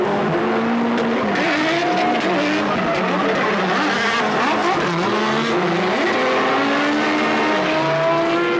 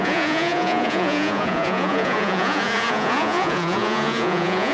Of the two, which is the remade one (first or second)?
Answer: second